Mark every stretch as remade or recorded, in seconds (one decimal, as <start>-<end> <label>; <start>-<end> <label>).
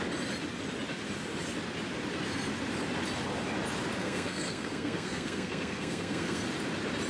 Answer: 0.0-4.0 recorded; 4.0-6.4 remade; 6.4-7.1 recorded